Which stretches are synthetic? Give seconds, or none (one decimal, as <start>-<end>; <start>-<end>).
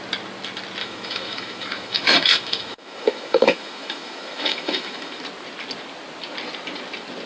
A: 0.8-5.2